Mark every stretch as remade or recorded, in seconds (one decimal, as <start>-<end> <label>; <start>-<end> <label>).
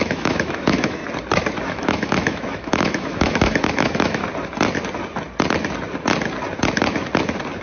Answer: 0.0-1.0 remade; 1.0-1.6 recorded; 1.6-4.2 remade; 4.2-7.6 recorded